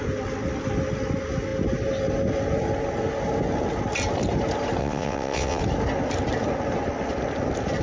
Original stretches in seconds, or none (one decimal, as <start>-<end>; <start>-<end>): 0.0-4.8; 5.6-7.8